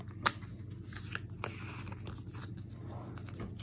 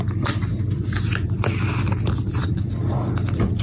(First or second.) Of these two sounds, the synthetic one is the second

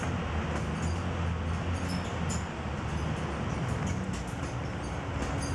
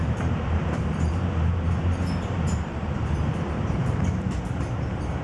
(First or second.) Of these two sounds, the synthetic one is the second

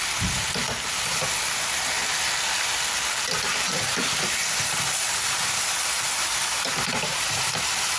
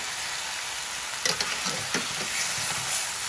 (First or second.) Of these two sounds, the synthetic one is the first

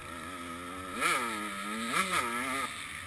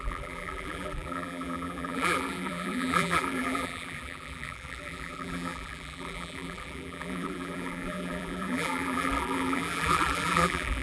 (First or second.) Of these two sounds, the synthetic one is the second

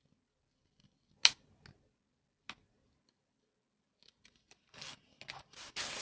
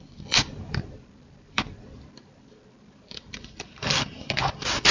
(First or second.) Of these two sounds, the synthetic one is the second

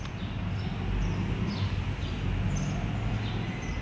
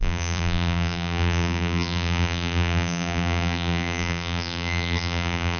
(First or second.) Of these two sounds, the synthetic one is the second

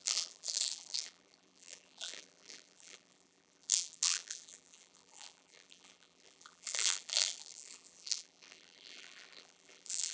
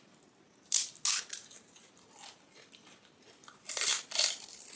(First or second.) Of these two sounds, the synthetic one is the first